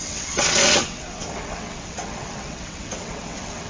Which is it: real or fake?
fake